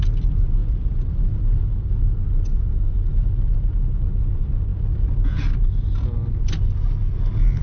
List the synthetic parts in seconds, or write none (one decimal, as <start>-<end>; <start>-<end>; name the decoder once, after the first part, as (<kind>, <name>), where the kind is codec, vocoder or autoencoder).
none